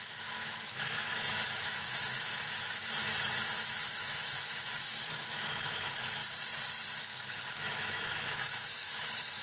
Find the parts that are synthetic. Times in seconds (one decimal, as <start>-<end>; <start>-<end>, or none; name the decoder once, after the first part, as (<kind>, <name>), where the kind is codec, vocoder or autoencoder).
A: 0.0-6.2 (autoencoder, DAC-VAE); 7.0-9.4